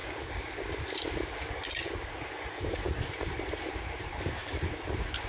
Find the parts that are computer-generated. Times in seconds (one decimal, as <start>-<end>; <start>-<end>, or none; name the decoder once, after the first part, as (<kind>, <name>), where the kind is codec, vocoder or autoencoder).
2.6-5.3 (vocoder, BigVGAN v2)